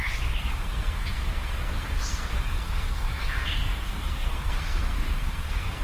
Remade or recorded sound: remade